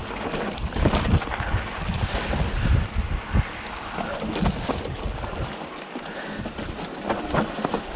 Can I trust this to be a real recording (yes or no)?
yes